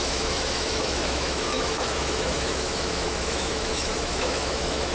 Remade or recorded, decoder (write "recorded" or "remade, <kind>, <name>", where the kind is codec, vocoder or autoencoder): remade, autoencoder, DAC-VAE